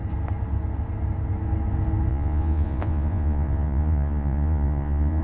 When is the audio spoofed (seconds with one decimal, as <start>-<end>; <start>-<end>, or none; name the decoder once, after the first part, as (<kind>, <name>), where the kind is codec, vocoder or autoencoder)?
2.1-5.2 (vocoder, Vocos)